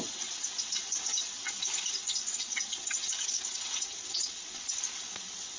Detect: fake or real fake